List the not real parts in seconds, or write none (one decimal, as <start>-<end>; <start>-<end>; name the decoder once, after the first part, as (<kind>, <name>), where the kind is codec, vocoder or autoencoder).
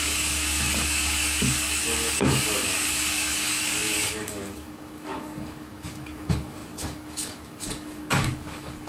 0.0-8.9 (codec, DAC)